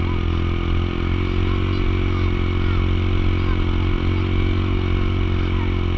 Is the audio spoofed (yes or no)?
no